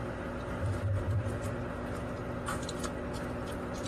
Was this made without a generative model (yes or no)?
no